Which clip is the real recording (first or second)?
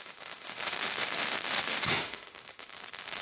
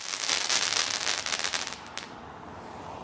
second